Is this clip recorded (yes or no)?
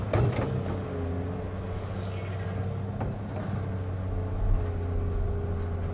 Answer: yes